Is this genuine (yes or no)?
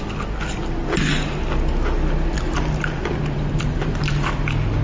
yes